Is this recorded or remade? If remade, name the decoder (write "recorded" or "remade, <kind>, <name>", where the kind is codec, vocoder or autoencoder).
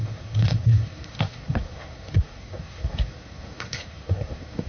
remade, codec, SNAC